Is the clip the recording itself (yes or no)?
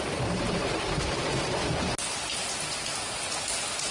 yes